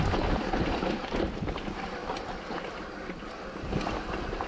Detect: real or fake fake